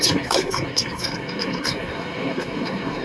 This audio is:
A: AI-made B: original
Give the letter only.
A